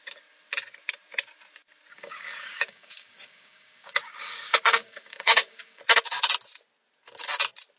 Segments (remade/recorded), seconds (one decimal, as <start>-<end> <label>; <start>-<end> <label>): 0.0-1.9 recorded; 1.9-5.8 remade; 5.8-7.8 recorded